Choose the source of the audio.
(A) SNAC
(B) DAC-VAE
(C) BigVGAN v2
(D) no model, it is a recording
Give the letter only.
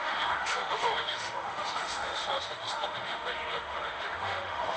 B